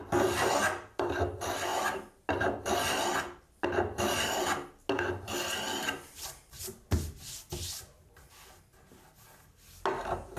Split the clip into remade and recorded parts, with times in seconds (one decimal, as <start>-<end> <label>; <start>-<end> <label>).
0.0-10.4 recorded